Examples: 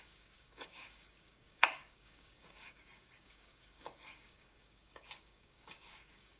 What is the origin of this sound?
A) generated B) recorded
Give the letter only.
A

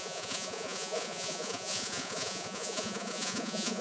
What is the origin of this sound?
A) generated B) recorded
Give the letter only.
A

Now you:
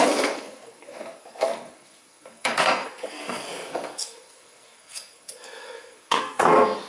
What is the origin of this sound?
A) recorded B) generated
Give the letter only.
B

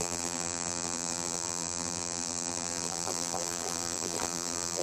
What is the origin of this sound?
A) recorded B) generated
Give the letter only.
B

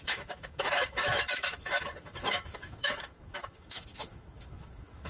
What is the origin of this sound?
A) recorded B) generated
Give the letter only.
B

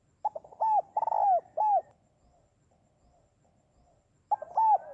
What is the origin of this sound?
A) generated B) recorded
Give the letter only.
B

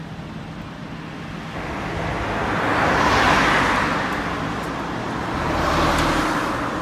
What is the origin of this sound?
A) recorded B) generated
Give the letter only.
A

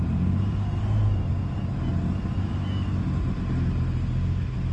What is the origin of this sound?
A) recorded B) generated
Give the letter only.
A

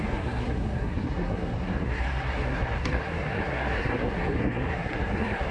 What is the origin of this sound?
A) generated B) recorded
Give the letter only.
A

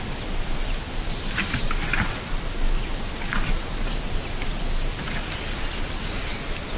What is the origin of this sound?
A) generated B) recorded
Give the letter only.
B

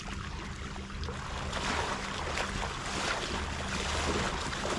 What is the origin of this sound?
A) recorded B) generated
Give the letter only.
A